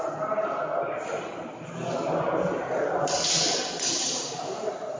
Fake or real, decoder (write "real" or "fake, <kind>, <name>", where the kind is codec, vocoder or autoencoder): real